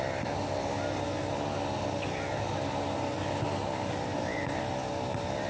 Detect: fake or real real